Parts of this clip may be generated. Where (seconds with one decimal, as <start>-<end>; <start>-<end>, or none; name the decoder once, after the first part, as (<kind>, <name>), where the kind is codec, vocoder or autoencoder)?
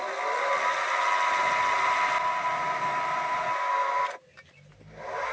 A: none